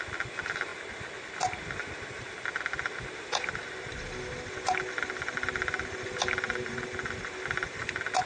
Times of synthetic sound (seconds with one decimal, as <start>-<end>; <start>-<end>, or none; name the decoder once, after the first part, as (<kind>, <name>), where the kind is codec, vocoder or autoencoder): none